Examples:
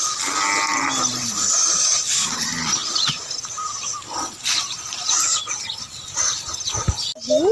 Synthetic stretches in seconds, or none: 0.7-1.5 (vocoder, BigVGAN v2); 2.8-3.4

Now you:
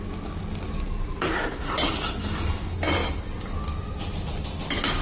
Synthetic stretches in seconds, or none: none

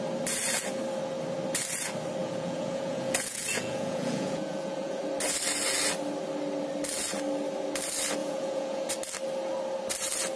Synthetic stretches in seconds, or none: 2.2-5.0 (vocoder, Vocos); 8.2-8.9

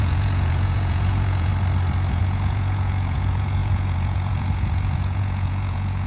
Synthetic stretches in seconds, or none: 0.0-1.5 (vocoder, Vocos); 2.1-6.1

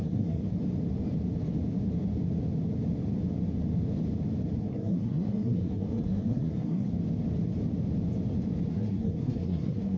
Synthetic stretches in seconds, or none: 0.0-0.4 (codec, SNAC); 4.6-6.9; 8.7-10.0